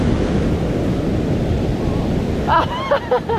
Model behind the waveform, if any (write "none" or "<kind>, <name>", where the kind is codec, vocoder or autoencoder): none